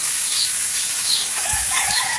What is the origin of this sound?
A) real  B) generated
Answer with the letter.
B